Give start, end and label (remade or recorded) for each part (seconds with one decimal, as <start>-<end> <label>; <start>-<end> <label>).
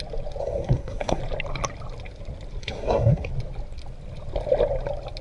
0.0-0.4 recorded; 0.4-1.2 remade; 1.2-2.6 recorded; 2.6-3.3 remade; 3.3-5.2 recorded